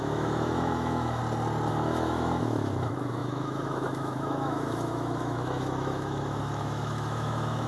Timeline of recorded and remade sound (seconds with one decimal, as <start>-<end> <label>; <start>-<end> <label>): 0.0-1.2 remade; 1.2-1.7 recorded; 1.7-7.7 remade